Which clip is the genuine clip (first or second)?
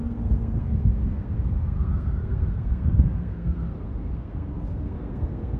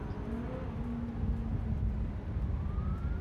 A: second